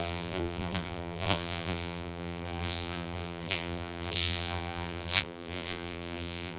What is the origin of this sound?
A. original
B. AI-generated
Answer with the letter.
B